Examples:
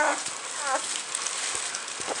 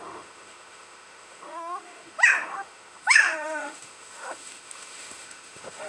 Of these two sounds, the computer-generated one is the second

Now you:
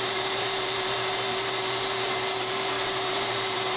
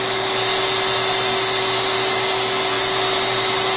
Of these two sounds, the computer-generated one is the first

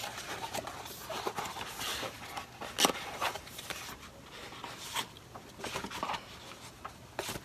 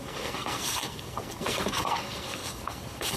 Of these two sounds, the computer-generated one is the second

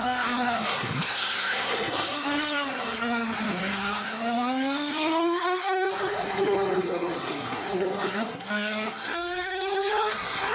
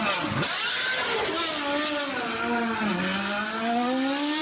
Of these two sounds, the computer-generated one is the first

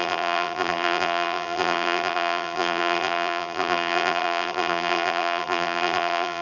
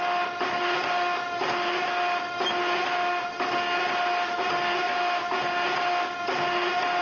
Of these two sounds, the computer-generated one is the first